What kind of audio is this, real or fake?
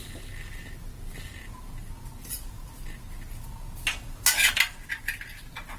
real